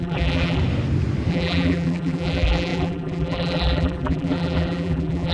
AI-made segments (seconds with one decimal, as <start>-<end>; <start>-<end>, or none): 0.0-0.6; 1.3-5.3